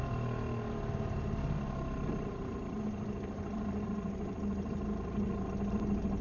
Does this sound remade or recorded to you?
recorded